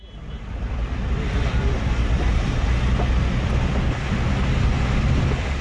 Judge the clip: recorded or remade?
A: remade